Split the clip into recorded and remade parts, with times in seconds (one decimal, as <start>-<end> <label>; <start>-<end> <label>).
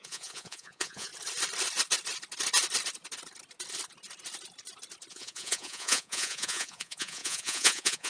0.0-1.1 remade; 1.1-5.1 recorded; 5.1-8.1 remade